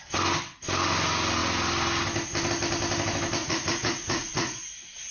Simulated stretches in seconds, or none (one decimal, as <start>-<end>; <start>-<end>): 3.4-5.1